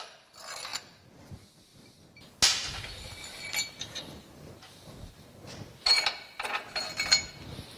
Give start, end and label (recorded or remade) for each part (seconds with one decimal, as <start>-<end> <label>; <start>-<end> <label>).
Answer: 0.0-7.8 recorded